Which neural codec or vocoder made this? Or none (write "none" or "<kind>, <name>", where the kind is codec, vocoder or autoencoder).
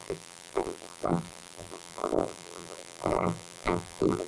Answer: vocoder, BigVGAN v2